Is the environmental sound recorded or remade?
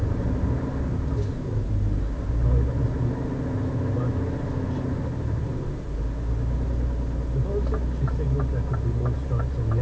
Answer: recorded